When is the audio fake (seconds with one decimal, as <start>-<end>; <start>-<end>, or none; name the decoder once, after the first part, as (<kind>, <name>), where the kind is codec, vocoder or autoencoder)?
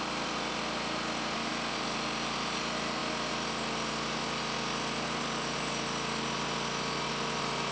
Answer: none